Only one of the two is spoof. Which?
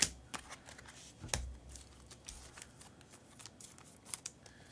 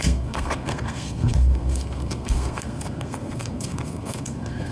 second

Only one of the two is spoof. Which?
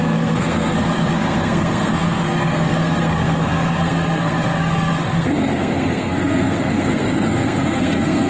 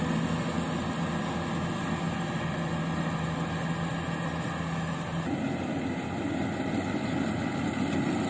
first